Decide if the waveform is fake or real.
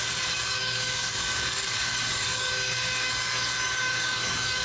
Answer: fake